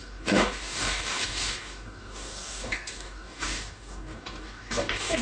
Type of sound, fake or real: fake